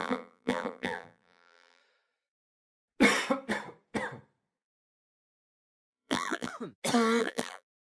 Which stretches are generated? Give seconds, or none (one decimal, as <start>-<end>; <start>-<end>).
0.0-1.8; 5.9-6.5; 7.2-8.0